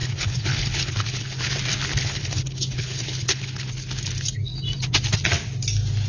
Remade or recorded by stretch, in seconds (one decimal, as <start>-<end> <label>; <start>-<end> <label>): 0.0-1.5 remade; 1.5-1.9 recorded; 1.9-3.7 remade; 3.7-6.1 recorded